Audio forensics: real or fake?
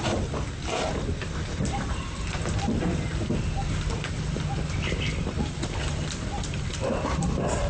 fake